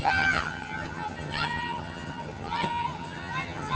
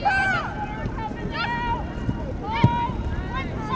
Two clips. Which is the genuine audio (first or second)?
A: second